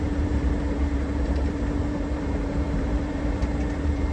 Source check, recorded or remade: remade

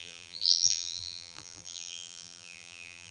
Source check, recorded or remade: remade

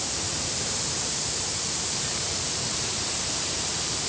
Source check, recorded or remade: remade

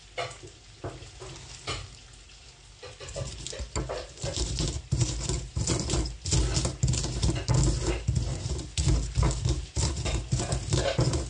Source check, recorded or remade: recorded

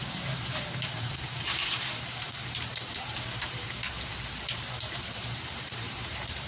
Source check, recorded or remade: remade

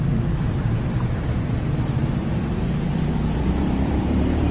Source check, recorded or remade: remade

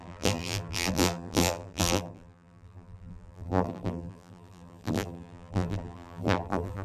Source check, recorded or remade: remade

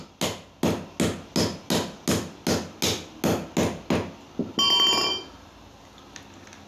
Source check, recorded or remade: recorded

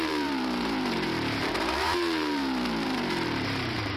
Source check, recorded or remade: remade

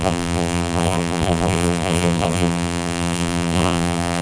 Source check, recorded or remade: remade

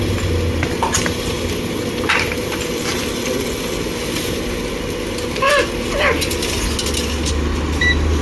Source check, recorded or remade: recorded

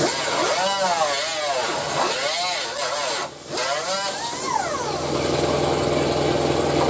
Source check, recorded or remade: recorded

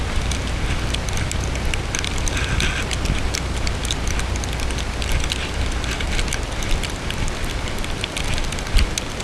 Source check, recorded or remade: recorded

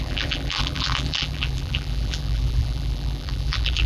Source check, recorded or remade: remade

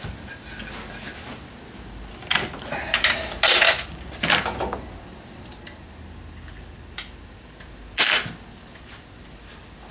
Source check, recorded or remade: recorded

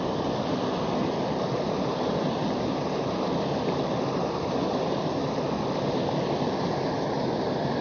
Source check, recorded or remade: recorded